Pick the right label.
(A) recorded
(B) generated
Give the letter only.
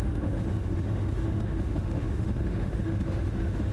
B